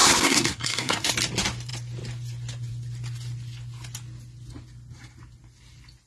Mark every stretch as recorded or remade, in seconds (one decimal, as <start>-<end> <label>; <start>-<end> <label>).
0.0-1.1 remade; 1.1-6.1 recorded